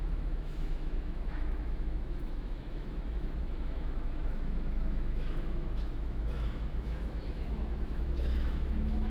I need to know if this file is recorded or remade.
remade